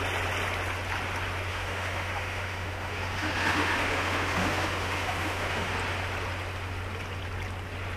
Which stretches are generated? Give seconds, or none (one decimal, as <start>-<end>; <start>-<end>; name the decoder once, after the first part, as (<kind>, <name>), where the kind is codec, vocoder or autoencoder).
1.5-5.7 (autoencoder, DAC-VAE)